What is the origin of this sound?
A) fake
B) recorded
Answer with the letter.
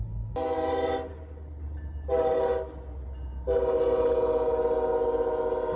B